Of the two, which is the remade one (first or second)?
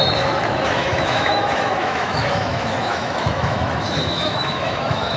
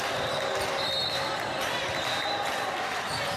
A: first